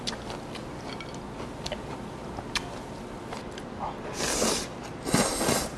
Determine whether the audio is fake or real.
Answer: real